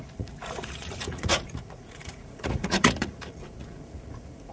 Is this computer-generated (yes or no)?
yes